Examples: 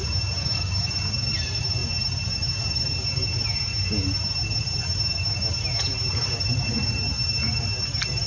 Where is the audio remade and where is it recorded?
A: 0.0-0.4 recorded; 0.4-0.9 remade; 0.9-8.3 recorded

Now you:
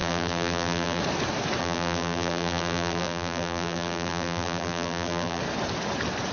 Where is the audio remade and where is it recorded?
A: 0.0-1.0 remade; 1.0-1.6 recorded; 1.6-5.4 remade; 5.4-6.3 recorded